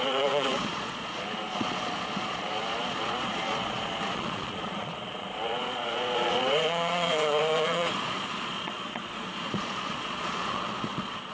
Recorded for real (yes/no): no